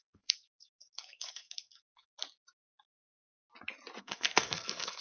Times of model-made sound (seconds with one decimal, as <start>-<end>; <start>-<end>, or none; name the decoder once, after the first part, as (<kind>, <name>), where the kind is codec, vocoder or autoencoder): 0.0-2.1 (codec, SNAC); 4.0-5.0